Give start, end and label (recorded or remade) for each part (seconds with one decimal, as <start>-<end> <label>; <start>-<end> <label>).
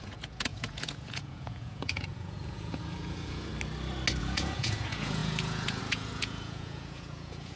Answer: 0.0-3.5 remade; 3.5-4.2 recorded; 4.2-7.6 remade